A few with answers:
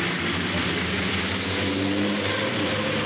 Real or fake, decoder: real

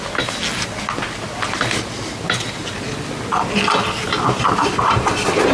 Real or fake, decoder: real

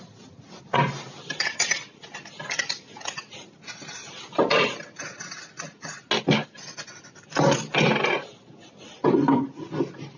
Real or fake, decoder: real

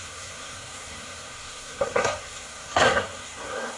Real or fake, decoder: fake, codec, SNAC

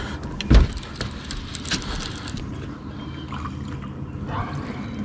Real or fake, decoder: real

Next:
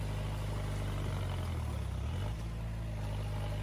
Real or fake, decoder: real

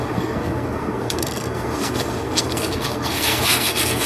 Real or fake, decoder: fake, codec, SNAC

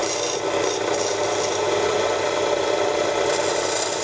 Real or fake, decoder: real